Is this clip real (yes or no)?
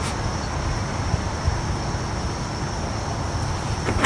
yes